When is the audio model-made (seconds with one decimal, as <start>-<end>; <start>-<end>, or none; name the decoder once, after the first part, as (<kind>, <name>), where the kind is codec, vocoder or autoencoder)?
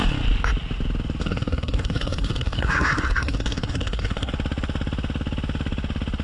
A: 1.2-4.3 (codec, SNAC)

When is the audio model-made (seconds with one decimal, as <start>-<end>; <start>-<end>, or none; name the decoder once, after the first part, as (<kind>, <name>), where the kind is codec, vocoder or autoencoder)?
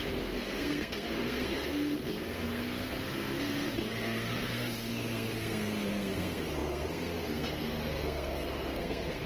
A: 0.0-9.3 (codec, SNAC)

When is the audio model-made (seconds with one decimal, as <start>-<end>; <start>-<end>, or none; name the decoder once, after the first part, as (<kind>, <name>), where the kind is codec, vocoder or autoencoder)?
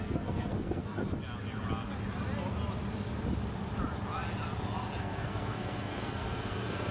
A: 0.0-1.0 (codec, SNAC); 5.0-6.9